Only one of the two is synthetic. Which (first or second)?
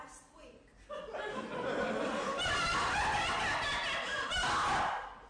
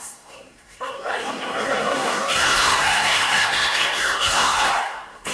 second